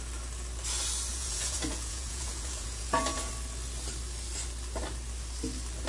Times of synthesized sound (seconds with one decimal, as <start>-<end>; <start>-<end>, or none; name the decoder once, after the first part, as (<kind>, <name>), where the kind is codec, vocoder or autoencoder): 1.1-3.3 (vocoder, Vocos)